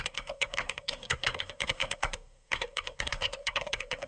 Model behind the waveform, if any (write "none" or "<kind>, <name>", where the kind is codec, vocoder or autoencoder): codec, SNAC